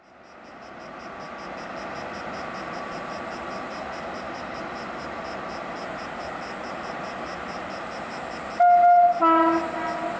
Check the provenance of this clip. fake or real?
real